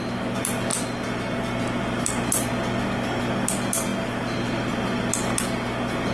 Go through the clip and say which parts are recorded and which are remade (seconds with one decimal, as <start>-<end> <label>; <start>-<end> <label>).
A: 0.0-6.1 recorded